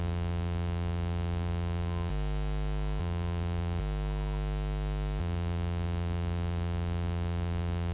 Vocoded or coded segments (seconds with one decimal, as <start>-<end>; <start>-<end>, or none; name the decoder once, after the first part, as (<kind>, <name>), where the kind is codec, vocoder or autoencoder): 0.0-2.1 (vocoder, BigVGAN v2); 3.0-3.8; 5.2-7.9